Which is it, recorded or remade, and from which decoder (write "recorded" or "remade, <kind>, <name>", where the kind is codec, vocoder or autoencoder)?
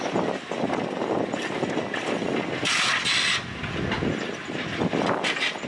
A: recorded